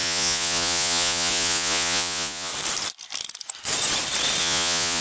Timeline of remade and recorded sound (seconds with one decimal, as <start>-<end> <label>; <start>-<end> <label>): 0.0-2.5 remade; 2.5-4.4 recorded; 4.4-5.0 remade